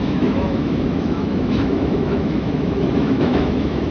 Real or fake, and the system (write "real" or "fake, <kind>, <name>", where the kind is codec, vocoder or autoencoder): fake, autoencoder, DAC-VAE